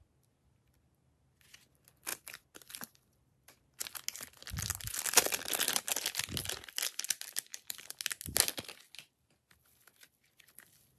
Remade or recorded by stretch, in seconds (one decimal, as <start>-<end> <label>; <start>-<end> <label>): 0.0-2.1 recorded; 2.1-3.6 remade; 3.6-7.5 recorded; 7.5-8.0 remade; 8.0-11.0 recorded